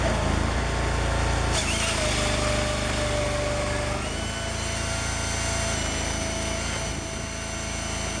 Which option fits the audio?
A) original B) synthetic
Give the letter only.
A